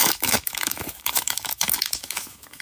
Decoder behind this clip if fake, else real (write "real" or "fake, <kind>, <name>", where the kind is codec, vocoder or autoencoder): fake, autoencoder, DAC-VAE